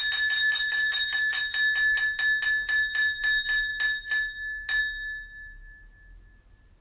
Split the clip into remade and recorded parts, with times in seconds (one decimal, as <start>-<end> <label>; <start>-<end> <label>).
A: 0.0-0.4 recorded; 0.4-1.4 remade; 1.4-6.8 recorded